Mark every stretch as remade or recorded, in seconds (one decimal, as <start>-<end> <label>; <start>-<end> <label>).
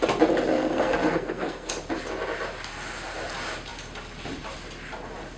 0.0-0.5 recorded; 0.5-1.7 remade; 1.7-5.4 recorded